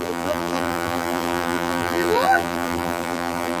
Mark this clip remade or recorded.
remade